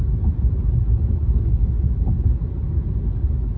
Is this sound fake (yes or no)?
no